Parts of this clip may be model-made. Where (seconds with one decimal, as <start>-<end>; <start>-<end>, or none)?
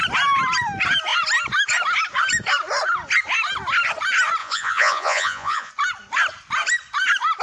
4.4-5.7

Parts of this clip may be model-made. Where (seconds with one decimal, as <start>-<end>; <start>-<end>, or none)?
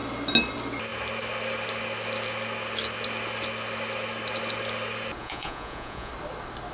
5.2-6.1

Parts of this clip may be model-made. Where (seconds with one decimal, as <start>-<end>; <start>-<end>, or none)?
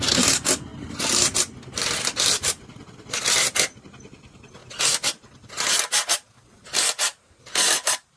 none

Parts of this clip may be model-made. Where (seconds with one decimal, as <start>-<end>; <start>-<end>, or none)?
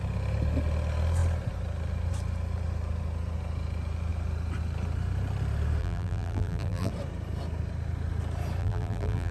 5.8-6.9; 8.6-9.3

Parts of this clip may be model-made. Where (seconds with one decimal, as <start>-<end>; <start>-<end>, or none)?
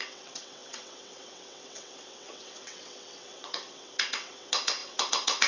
0.0-5.5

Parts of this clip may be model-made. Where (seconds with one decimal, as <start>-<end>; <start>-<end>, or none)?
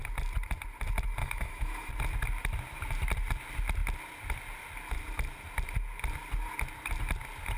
1.2-1.9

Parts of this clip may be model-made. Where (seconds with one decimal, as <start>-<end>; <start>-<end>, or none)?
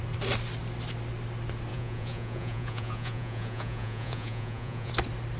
1.7-4.9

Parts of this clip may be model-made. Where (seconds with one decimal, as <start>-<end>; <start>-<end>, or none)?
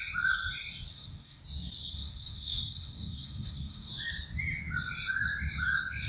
0.9-1.4; 1.9-3.9